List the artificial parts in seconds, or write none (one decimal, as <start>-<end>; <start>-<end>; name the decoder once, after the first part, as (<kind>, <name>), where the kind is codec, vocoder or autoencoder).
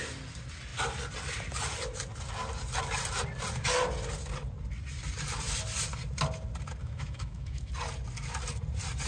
6.8-7.7 (autoencoder, DAC-VAE)